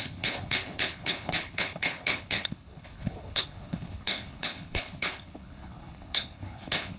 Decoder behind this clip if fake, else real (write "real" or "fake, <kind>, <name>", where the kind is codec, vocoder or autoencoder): fake, codec, HILCodec